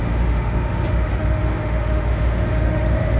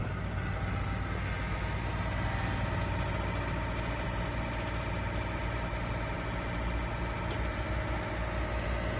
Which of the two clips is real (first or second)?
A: second